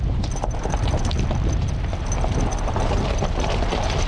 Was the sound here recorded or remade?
recorded